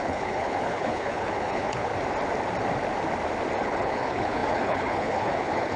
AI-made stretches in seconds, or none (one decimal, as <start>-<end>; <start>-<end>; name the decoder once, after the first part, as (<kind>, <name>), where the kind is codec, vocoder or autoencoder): 0.0-1.9 (codec, HILCodec); 3.6-5.8